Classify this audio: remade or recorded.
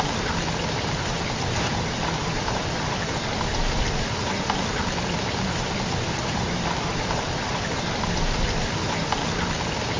recorded